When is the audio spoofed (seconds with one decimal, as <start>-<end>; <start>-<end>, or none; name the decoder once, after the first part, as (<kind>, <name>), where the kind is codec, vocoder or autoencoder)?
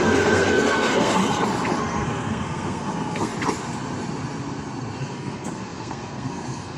0.0-1.2 (codec, SNAC); 1.8-3.3; 5.0-6.8